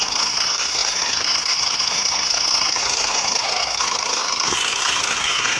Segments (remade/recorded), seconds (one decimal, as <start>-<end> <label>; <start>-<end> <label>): 0.0-5.6 remade